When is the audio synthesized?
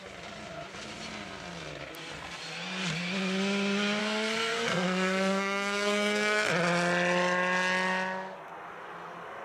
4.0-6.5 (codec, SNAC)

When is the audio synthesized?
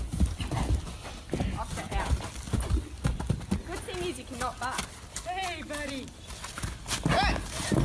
none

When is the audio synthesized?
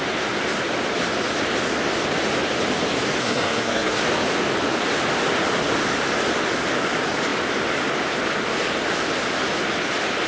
3.2-4.0 (codec, SNAC)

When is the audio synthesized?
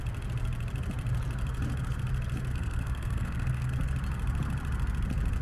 2.5-3.7 (codec, SNAC)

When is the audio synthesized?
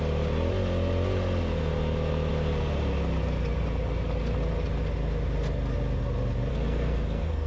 6.5-7.5 (codec, SNAC)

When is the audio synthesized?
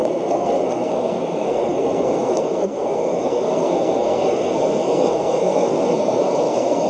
0.0-6.9 (codec, SNAC)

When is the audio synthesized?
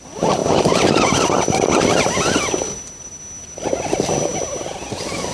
none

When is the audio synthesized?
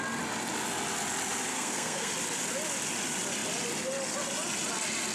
1.5-2.1 (codec, SNAC)